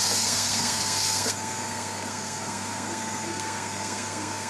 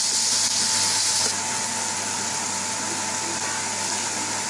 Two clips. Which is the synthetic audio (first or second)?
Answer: first